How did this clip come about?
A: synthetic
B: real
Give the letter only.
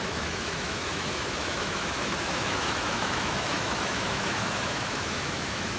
A